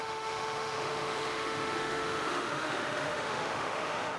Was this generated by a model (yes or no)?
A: yes